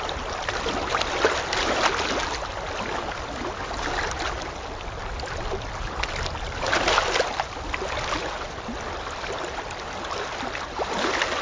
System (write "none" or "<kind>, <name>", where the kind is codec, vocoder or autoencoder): none